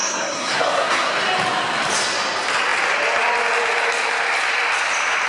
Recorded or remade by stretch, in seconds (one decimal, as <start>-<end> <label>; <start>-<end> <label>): 0.0-1.1 remade; 1.1-5.3 recorded